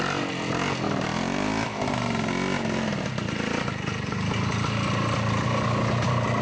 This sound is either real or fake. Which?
real